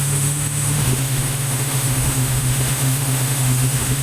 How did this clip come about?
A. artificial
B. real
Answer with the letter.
A